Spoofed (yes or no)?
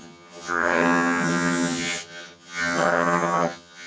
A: yes